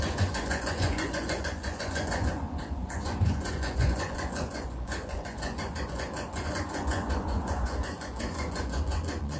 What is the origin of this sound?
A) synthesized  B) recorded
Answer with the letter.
A